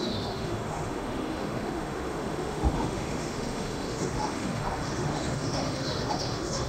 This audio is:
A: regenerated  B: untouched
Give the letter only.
A